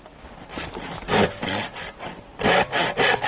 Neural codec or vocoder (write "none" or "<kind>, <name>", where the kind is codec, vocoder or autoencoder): none